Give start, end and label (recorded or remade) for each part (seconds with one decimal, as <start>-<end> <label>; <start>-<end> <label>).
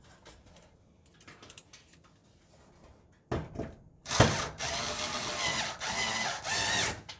0.0-7.2 recorded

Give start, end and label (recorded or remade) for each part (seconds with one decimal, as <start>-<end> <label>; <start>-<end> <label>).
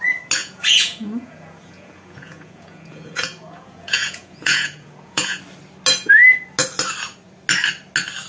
0.0-0.4 recorded; 0.4-5.4 remade; 5.4-8.3 recorded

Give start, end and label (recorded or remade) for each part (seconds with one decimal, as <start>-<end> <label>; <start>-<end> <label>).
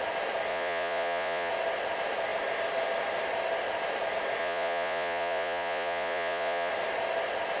0.0-0.5 recorded; 0.5-1.5 remade; 1.5-4.4 recorded; 4.4-6.7 remade; 6.7-7.6 recorded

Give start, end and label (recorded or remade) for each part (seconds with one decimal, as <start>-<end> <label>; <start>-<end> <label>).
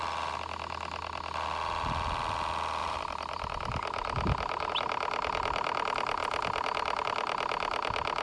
0.0-2.8 recorded; 2.8-4.7 remade; 4.7-8.2 recorded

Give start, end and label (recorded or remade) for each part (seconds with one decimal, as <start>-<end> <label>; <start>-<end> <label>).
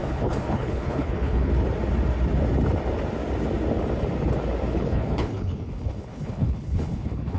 0.0-1.5 remade; 1.5-4.7 recorded; 4.7-7.4 remade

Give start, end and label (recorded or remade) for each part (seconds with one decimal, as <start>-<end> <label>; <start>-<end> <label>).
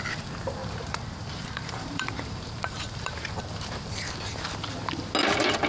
0.0-0.6 recorded; 0.6-3.3 remade; 3.3-5.7 recorded